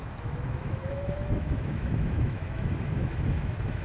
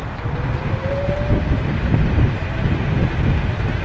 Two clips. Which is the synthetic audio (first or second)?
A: first